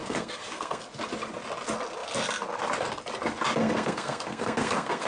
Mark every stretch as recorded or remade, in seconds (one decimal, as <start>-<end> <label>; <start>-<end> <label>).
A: 0.0-0.8 remade; 0.8-3.6 recorded; 3.6-5.1 remade